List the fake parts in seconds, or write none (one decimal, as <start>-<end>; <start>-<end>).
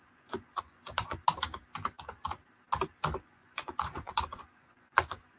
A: 0.0-1.2; 3.2-5.4